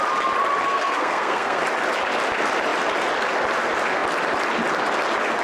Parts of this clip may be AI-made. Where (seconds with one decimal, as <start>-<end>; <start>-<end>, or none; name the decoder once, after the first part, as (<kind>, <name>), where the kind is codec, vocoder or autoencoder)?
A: 0.7-1.6 (codec, SNAC)